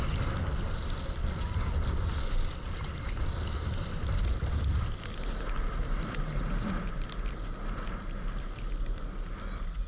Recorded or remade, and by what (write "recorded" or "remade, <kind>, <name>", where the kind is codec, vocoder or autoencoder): recorded